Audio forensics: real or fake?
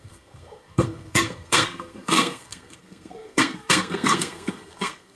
fake